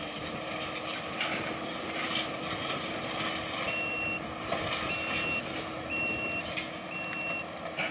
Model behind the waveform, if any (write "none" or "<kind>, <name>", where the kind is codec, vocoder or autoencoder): none